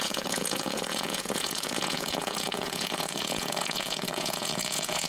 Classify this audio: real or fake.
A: fake